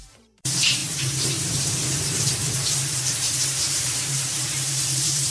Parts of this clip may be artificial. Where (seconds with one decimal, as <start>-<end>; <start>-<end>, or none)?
0.0-5.3